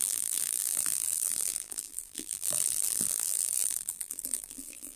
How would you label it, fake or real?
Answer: fake